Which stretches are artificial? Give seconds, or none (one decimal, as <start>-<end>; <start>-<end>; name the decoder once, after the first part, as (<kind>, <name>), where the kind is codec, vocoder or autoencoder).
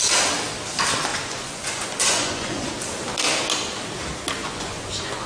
1.1-2.7 (vocoder, Vocos); 4.4-5.3